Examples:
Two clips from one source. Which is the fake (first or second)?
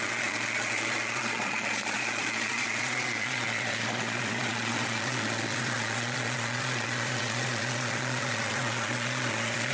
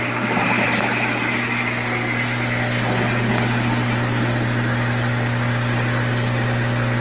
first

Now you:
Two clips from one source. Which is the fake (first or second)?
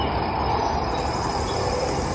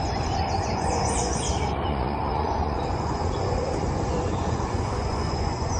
second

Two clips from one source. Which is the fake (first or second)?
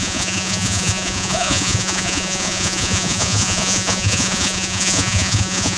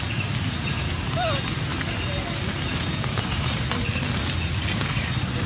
first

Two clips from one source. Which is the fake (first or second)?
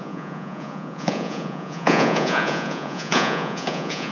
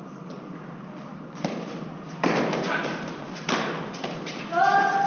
first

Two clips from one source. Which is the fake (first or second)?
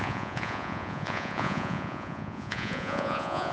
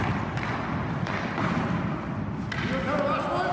first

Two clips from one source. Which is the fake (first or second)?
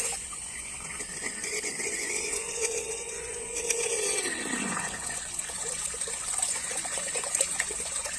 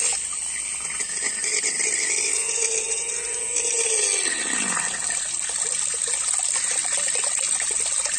first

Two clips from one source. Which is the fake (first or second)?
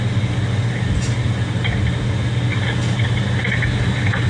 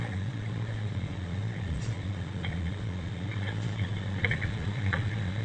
second